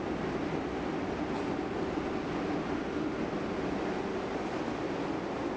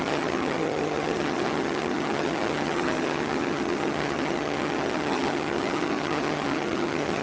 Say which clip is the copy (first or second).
second